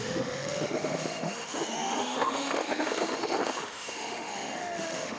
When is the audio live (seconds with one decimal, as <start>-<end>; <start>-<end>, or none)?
none